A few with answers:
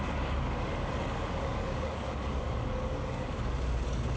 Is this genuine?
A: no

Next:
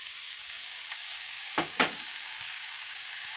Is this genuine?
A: no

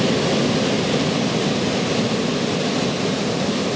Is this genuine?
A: yes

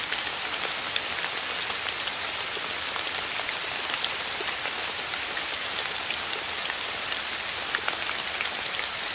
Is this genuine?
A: yes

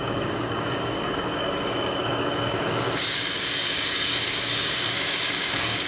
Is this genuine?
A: no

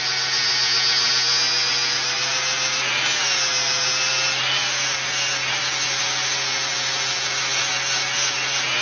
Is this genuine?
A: yes